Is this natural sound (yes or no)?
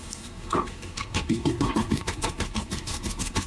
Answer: no